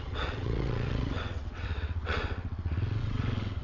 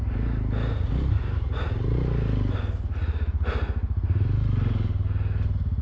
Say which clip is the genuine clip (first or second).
second